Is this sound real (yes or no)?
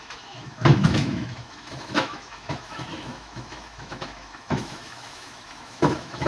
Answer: no